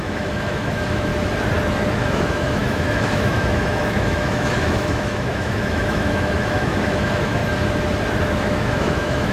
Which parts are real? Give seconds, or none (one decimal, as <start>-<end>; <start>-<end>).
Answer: 1.1-1.9; 7.4-8.2